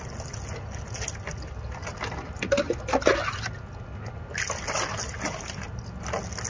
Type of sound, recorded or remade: recorded